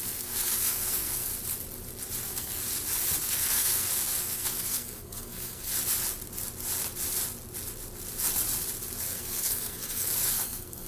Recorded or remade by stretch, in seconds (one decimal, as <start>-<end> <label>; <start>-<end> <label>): 0.0-1.3 remade; 1.3-2.2 recorded; 2.2-2.6 remade; 2.6-3.2 recorded; 3.2-5.7 remade; 5.7-9.0 recorded; 9.0-10.9 remade